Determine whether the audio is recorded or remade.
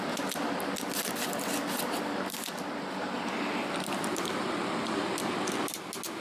recorded